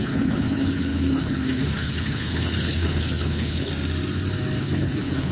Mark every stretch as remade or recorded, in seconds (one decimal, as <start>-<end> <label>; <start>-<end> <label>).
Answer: 0.0-3.7 remade; 3.7-4.6 recorded; 4.6-5.3 remade